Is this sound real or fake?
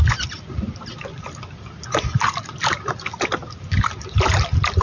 real